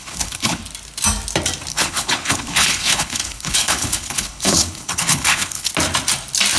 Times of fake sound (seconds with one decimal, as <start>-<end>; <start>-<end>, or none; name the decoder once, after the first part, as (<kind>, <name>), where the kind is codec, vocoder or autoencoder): 0.0-0.6 (codec, HILCodec); 1.7-5.7